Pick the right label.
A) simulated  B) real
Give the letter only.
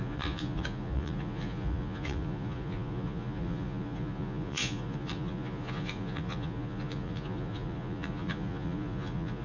A